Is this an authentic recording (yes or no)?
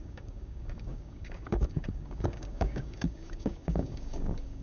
no